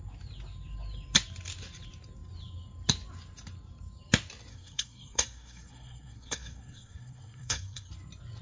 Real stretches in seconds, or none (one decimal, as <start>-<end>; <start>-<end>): 0.0-4.5; 7.9-8.4